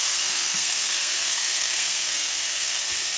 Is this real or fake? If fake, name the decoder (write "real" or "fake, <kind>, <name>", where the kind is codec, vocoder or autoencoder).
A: fake, codec, SNAC